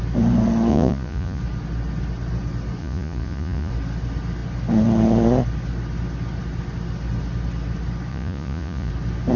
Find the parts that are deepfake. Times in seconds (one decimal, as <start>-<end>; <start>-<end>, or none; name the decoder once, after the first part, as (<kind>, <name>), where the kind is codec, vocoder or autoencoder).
0.7-1.4 (vocoder, Vocos); 2.8-3.7; 8.1-8.9